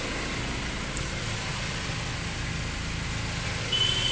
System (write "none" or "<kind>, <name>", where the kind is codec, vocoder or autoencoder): none